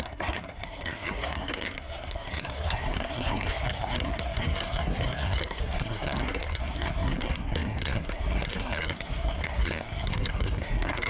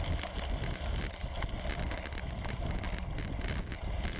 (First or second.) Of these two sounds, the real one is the second